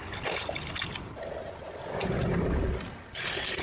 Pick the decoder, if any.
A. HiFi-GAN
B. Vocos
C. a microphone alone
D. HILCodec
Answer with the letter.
C